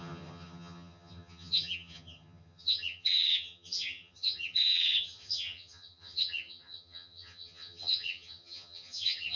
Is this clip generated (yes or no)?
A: yes